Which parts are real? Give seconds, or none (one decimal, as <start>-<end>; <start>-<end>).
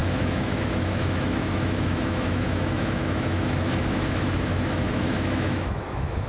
none